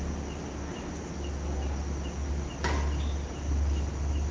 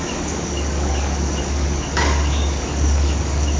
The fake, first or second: second